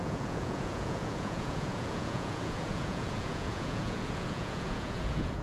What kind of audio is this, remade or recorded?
remade